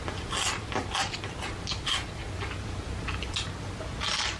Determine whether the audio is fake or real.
real